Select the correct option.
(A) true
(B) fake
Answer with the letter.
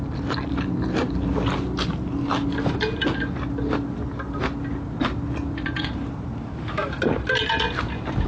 A